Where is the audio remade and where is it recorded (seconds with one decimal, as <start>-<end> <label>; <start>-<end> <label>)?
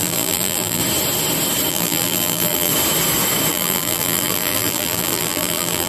0.0-0.8 remade; 0.8-1.7 recorded; 1.7-2.7 remade; 2.7-3.5 recorded; 3.5-5.9 remade